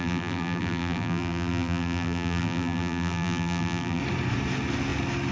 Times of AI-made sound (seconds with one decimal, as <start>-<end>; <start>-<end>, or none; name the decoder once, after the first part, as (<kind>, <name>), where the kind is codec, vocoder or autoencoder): 0.0-4.0 (vocoder, BigVGAN v2)